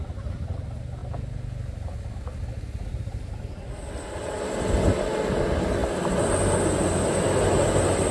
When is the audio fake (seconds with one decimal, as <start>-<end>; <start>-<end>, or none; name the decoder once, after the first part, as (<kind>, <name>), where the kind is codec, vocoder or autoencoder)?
none